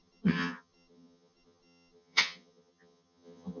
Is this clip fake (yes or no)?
yes